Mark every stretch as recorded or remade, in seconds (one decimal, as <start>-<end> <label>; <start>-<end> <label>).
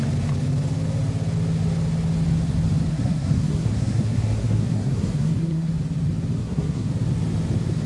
0.0-2.9 recorded; 2.9-5.7 remade; 5.7-6.4 recorded; 6.4-6.9 remade; 6.9-7.9 recorded